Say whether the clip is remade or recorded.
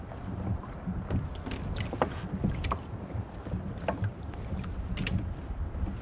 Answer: recorded